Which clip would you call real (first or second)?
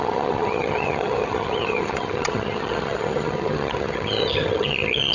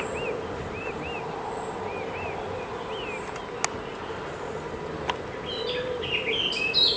second